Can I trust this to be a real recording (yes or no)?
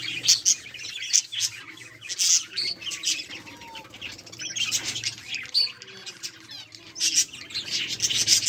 yes